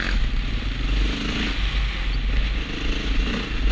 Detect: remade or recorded recorded